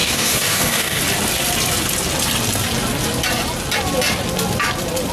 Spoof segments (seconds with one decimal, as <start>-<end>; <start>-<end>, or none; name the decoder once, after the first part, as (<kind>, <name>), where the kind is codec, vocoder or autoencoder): 0.0-1.0 (codec, DAC)